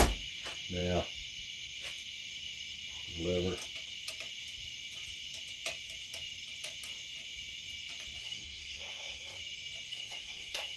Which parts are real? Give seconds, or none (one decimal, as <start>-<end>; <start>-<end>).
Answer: 0.0-8.2; 9.4-9.9